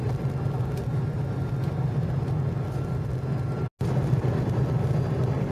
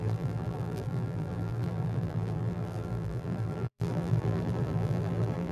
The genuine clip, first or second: first